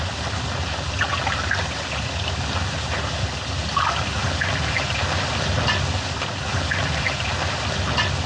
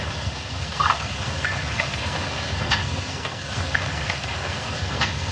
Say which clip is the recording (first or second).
first